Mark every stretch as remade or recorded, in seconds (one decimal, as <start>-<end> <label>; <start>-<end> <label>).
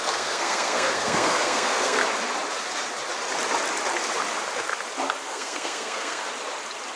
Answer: 0.0-2.0 remade; 2.0-5.3 recorded; 5.3-6.2 remade; 6.2-7.0 recorded